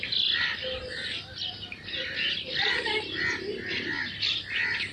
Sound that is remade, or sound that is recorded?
recorded